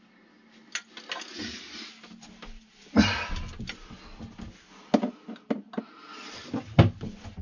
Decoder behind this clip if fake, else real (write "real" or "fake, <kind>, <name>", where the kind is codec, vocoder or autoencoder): real